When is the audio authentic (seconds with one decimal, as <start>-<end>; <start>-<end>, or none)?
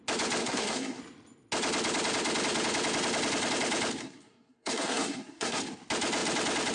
0.0-0.4; 1.0-4.0; 5.6-6.7